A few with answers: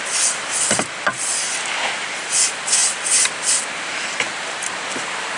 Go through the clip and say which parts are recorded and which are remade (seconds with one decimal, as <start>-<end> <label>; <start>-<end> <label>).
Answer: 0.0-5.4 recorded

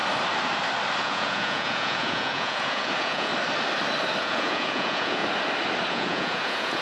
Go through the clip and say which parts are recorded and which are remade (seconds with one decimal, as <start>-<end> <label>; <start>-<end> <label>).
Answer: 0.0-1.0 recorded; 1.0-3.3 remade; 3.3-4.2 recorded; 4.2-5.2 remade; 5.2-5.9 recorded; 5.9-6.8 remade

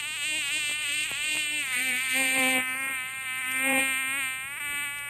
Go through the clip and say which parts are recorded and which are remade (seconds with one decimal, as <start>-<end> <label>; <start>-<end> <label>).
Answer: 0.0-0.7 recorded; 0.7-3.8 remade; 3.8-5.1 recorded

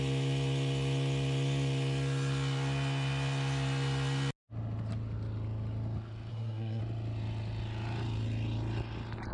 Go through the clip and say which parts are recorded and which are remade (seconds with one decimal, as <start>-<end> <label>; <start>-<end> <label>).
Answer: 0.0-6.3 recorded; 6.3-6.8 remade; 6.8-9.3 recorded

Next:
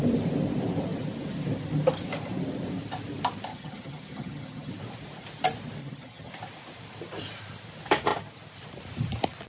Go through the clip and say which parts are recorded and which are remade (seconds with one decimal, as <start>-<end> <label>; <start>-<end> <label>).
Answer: 0.0-3.5 recorded; 3.5-4.7 remade; 4.7-5.8 recorded; 5.8-6.3 remade; 6.3-9.5 recorded

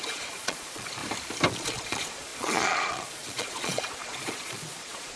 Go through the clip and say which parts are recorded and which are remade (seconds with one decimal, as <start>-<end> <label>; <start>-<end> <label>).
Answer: 0.0-1.0 remade; 1.0-1.5 recorded; 1.5-5.2 remade

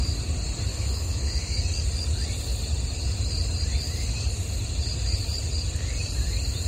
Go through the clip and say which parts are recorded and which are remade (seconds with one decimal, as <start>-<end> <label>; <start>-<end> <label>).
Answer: 0.0-0.7 recorded; 0.7-1.6 remade; 1.6-6.7 recorded